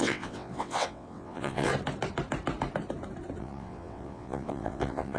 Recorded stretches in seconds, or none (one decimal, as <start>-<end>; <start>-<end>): 1.7-3.4